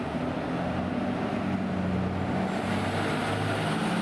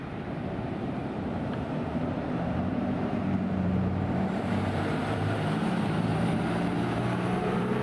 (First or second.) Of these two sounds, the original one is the first